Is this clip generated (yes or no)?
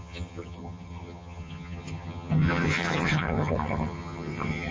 yes